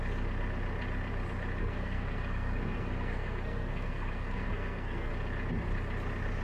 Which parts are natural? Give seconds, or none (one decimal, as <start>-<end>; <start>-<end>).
0.0-1.6; 5.1-6.4